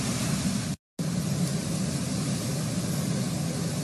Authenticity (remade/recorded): recorded